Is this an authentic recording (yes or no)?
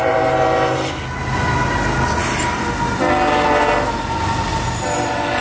yes